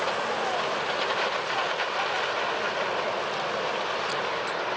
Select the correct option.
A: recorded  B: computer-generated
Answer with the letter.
A